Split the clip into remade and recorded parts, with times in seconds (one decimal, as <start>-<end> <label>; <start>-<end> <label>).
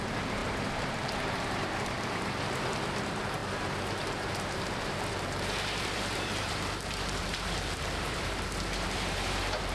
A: 0.0-9.7 remade